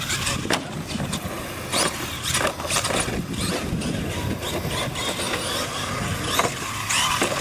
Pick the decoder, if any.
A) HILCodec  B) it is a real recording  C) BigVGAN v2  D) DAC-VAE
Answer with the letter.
B